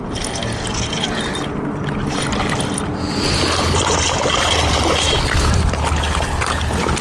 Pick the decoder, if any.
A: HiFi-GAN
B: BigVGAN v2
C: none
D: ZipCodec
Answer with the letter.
C